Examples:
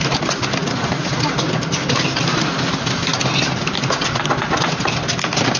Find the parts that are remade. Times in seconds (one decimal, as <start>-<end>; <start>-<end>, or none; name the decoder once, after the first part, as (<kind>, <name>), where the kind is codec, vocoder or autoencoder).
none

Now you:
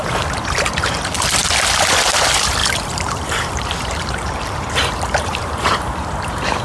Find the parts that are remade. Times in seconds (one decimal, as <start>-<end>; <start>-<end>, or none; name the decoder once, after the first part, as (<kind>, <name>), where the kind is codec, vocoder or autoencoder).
2.6-6.6 (vocoder, BigVGAN v2)

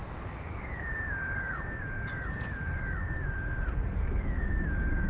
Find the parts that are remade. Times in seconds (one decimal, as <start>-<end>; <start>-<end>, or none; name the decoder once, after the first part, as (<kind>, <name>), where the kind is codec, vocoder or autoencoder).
none